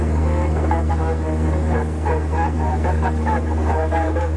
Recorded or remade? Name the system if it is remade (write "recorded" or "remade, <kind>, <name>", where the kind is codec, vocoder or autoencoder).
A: remade, codec, SNAC